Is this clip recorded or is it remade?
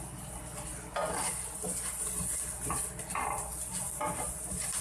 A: recorded